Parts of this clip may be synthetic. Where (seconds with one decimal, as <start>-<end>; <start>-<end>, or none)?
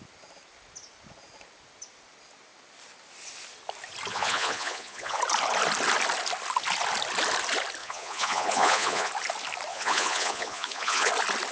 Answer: 4.1-5.2; 7.8-9.1; 9.7-11.1